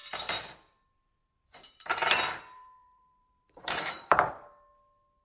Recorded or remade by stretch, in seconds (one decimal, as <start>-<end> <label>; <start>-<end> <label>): 0.0-0.5 remade; 0.5-1.2 recorded; 1.2-4.3 remade; 4.3-5.2 recorded